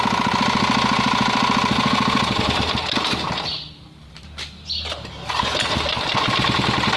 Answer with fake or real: real